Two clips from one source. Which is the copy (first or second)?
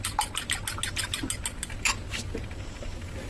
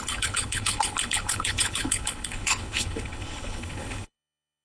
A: second